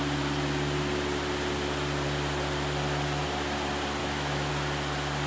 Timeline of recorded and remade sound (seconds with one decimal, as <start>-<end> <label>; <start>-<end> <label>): 0.0-4.0 recorded; 4.0-4.5 remade; 4.5-5.3 recorded